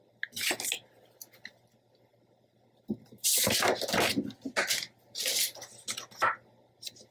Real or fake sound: real